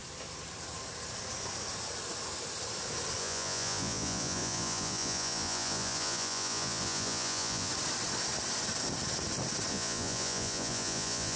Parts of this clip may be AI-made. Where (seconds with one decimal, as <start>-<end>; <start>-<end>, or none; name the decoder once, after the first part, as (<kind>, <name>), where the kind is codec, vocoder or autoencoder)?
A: 3.2-7.7 (vocoder, Vocos); 9.7-11.4